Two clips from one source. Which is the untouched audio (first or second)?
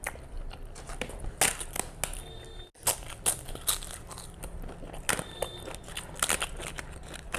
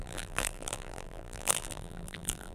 first